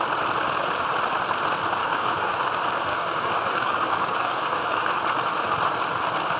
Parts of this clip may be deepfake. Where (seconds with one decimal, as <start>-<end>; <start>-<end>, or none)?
1.8-2.4; 2.9-5.0